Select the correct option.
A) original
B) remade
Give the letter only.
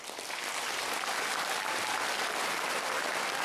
A